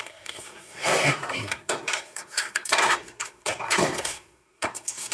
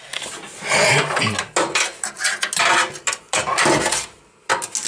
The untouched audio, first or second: second